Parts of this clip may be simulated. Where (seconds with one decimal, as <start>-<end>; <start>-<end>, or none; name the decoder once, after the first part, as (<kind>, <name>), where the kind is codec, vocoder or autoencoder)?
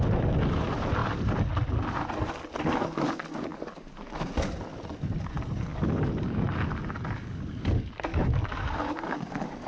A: 3.5-4.3 (codec, DAC); 5.7-9.7